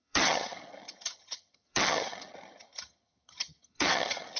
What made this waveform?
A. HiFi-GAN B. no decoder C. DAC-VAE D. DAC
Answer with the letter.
A